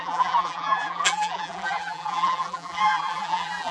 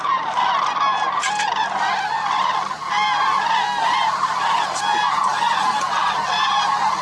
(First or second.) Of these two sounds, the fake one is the first